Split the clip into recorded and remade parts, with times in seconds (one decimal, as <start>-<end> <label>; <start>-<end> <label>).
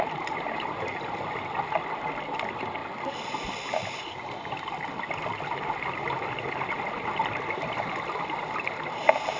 0.0-9.4 recorded